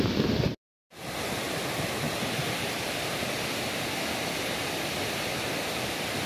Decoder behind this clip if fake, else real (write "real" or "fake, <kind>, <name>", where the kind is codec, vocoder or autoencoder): fake, vocoder, BigVGAN v2